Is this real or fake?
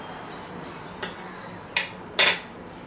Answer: real